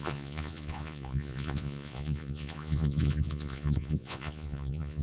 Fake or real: fake